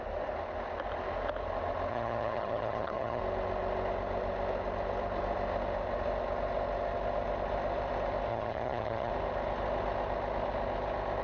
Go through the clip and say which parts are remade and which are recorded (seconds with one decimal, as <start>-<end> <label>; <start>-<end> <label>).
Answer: 0.0-1.9 recorded; 1.9-3.2 remade; 3.2-8.3 recorded; 8.3-9.1 remade; 9.1-11.2 recorded